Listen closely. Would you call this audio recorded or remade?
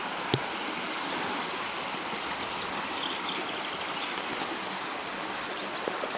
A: recorded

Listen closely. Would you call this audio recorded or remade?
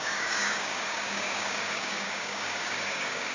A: remade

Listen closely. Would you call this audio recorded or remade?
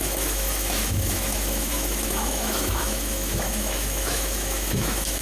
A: remade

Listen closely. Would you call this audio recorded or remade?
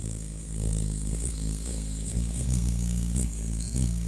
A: remade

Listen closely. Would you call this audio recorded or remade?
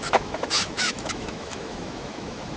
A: remade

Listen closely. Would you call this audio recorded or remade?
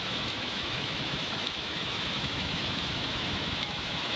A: remade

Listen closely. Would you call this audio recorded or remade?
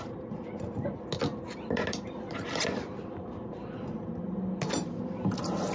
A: recorded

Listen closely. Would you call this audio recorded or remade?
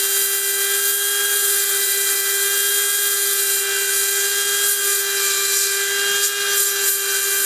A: recorded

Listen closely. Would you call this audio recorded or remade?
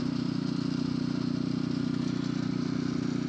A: recorded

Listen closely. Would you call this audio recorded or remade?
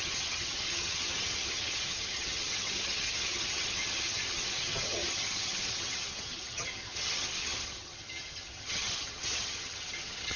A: remade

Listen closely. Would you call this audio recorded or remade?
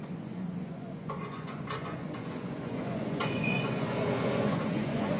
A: remade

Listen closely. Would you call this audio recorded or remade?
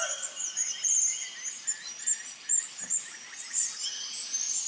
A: recorded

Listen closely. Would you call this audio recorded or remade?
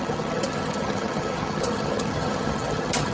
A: remade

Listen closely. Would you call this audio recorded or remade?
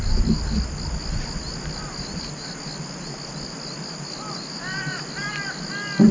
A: recorded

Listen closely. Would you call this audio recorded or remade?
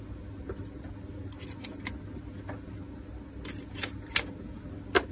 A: recorded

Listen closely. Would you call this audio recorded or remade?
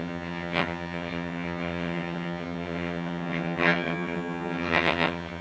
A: remade